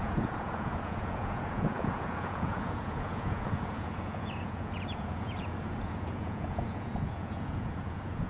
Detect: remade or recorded remade